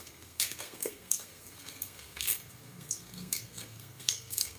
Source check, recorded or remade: remade